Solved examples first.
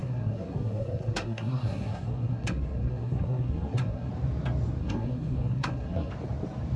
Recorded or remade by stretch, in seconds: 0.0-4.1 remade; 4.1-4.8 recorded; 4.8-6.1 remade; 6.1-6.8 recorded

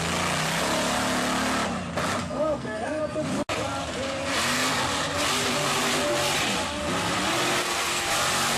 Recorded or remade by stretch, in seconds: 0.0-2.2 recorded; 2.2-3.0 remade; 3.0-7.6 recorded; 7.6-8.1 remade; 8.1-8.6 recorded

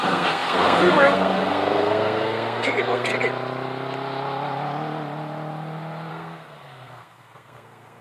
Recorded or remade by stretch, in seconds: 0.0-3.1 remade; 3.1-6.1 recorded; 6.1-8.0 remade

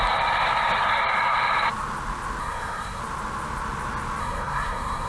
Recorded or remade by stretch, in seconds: 0.0-2.4 recorded; 2.4-3.0 remade; 3.0-4.2 recorded; 4.2-5.1 remade

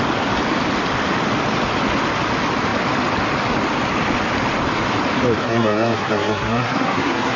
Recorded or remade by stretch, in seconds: 0.0-5.4 recorded; 5.4-7.4 remade

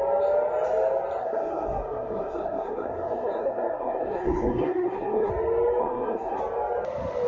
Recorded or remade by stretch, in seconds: 0.0-1.2 recorded; 1.2-5.3 remade; 5.3-5.8 recorded; 5.8-6.4 remade; 6.4-7.3 recorded

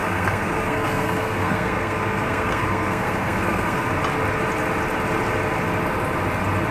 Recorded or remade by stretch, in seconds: 0.0-3.9 remade; 3.9-6.7 recorded

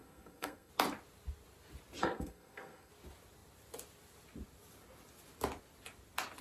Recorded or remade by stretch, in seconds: 0.0-0.7 remade; 0.7-2.0 recorded; 2.0-2.9 remade; 2.9-6.4 recorded